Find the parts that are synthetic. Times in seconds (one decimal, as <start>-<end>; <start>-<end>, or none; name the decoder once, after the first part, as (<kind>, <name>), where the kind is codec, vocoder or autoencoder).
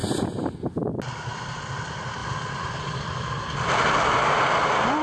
2.2-3.8 (vocoder, BigVGAN v2)